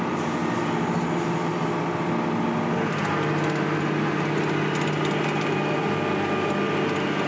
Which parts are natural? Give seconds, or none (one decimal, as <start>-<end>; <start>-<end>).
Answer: 0.0-7.3